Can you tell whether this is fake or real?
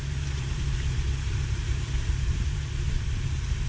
fake